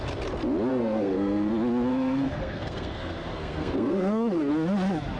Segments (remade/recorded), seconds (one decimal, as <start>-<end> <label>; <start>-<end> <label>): 0.0-0.7 recorded; 0.7-1.5 remade; 1.5-1.9 recorded; 1.9-4.5 remade; 4.5-5.2 recorded